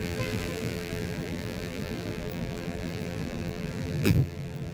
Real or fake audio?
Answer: fake